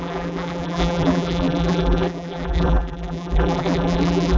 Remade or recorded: remade